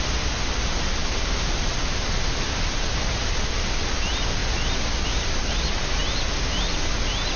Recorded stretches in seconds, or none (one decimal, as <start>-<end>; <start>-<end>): 0.0-7.4